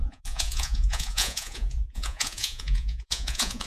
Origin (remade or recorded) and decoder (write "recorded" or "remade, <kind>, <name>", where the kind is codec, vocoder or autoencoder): remade, vocoder, Vocos